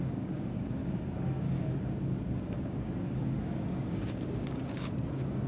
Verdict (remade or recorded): remade